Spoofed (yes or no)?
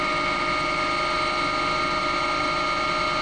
no